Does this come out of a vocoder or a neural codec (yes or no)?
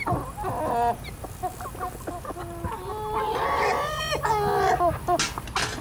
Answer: no